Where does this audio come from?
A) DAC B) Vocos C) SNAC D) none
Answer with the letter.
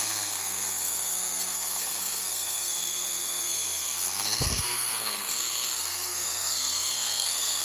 C